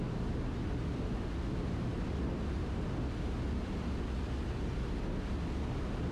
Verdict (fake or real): real